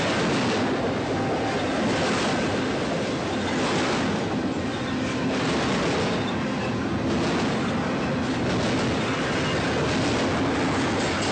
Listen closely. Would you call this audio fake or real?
real